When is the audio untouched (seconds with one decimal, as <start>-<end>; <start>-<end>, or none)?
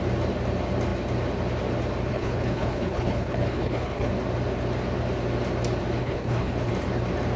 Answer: 0.0-2.1; 4.1-6.0; 6.7-7.4